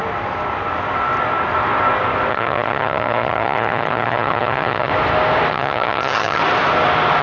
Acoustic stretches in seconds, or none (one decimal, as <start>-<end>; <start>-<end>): 0.0-2.3; 4.9-5.5; 6.4-7.2